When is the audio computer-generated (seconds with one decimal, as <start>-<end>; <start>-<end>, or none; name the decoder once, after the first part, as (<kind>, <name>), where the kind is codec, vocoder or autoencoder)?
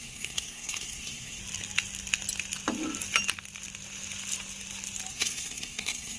0.0-1.4 (codec, SNAC); 5.1-6.2